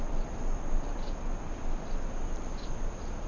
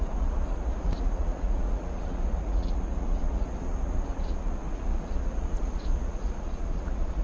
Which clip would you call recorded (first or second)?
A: first